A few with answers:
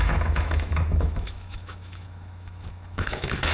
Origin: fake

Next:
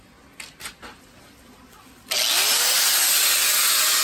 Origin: real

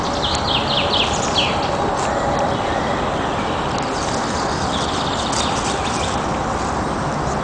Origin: real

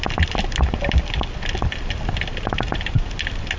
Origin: real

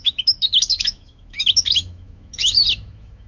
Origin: fake